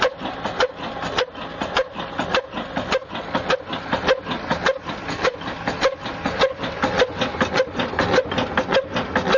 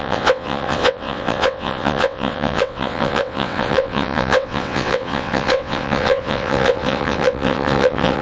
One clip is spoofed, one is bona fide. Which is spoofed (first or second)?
second